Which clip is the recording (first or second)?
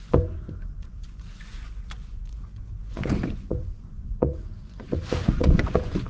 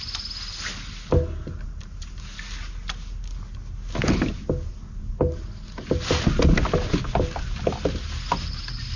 second